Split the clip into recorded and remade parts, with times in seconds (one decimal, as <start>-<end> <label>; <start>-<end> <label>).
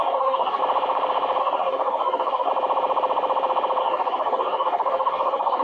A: 0.0-0.6 remade; 0.6-1.4 recorded; 1.4-2.5 remade; 2.5-3.8 recorded; 3.8-5.6 remade